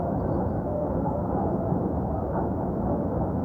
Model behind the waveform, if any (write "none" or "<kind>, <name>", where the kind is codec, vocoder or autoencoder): autoencoder, DAC-VAE